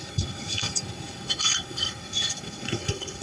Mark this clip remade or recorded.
remade